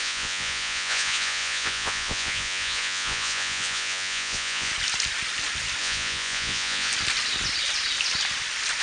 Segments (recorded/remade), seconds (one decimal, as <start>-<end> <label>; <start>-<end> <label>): 0.0-4.7 remade; 4.7-5.8 recorded; 5.8-6.9 remade; 6.9-8.8 recorded